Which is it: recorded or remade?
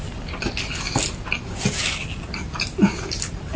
recorded